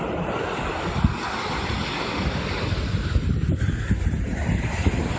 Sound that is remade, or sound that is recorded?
recorded